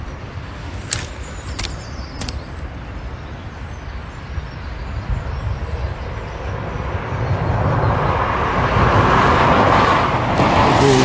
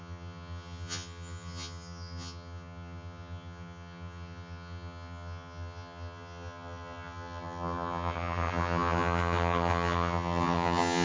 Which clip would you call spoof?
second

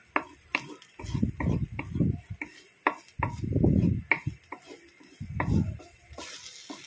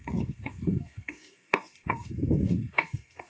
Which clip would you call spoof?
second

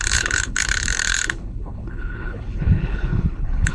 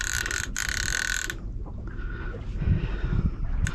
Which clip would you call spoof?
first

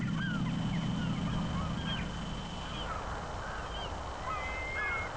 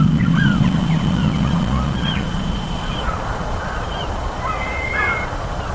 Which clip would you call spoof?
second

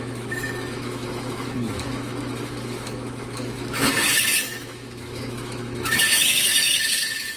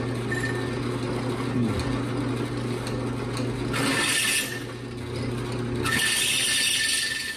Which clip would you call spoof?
first